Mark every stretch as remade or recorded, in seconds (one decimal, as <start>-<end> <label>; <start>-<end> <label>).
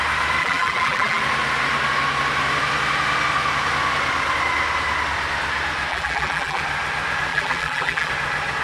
0.0-0.4 recorded; 0.4-1.2 remade; 1.2-5.9 recorded; 5.9-6.6 remade; 6.6-7.3 recorded; 7.3-8.1 remade; 8.1-8.6 recorded